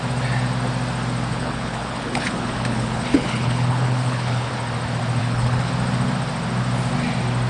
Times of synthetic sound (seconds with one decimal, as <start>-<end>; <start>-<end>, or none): 1.3-4.5; 5.2-5.7